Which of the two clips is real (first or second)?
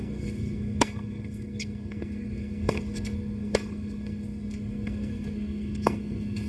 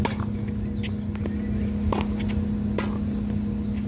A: second